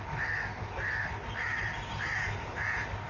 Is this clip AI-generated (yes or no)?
no